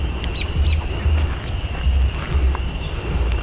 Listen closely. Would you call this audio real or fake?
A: real